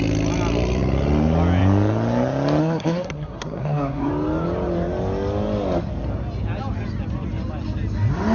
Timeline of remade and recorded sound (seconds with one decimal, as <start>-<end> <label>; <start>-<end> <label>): 0.0-2.6 recorded; 2.6-4.1 remade; 4.1-8.3 recorded